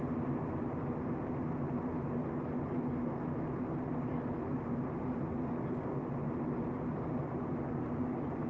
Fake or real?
real